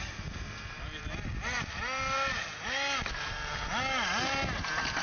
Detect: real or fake real